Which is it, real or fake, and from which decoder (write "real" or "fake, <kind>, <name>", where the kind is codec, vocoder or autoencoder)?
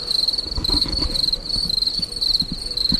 real